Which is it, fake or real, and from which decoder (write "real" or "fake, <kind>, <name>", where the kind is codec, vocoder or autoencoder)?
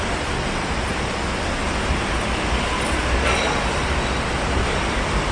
real